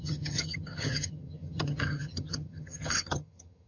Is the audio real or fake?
fake